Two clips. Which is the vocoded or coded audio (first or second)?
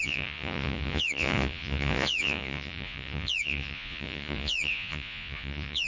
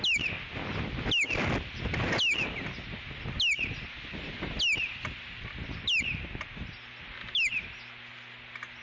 first